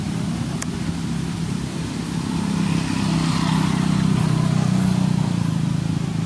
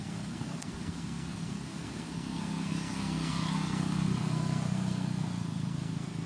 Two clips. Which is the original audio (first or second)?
first